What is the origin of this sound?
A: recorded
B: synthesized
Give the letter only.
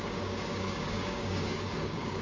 B